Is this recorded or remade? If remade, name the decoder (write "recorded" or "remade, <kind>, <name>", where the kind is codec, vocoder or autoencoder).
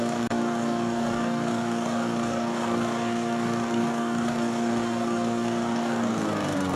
remade, codec, DAC